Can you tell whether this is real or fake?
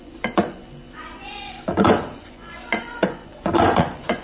fake